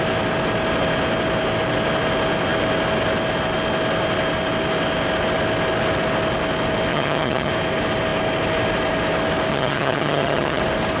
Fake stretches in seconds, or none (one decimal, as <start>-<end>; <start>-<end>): 6.9-7.5; 9.5-10.6